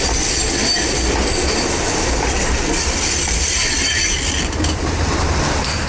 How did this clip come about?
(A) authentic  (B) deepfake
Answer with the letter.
A